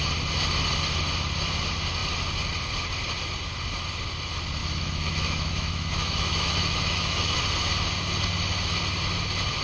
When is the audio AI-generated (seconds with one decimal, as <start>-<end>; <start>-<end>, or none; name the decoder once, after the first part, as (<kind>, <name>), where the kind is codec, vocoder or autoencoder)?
4.6-7.4 (autoencoder, DAC-VAE)